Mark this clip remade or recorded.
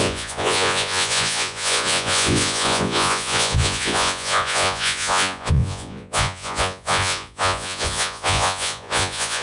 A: remade